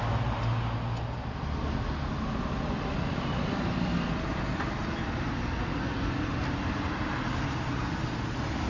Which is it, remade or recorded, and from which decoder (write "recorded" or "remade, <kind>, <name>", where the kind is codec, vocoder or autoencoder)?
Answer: recorded